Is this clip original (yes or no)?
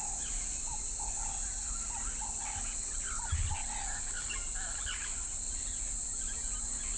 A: yes